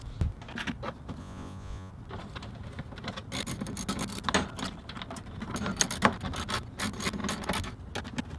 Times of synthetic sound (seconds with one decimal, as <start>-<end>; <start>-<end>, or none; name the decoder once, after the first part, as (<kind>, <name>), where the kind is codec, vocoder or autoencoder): 1.2-1.9 (vocoder, Vocos)